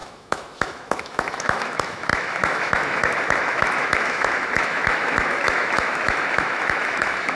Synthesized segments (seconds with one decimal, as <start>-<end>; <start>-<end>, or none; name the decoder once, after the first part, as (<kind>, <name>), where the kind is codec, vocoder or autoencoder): 0.0-7.4 (autoencoder, DAC-VAE)